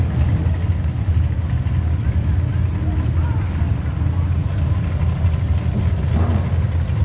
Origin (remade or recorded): recorded